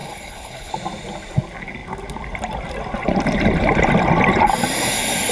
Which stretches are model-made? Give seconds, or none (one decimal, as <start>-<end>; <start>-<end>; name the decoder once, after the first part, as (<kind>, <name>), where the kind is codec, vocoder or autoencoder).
0.0-0.7 (codec, HILCodec)